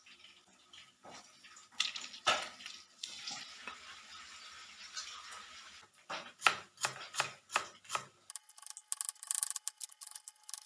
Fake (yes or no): no